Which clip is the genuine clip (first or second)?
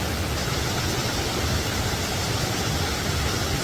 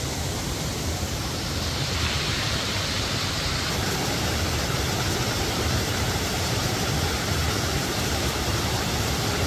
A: first